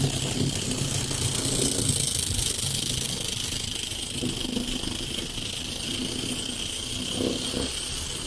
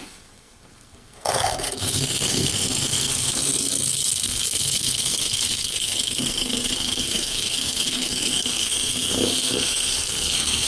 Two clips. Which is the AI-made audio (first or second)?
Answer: second